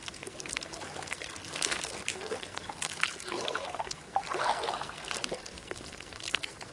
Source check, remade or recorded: remade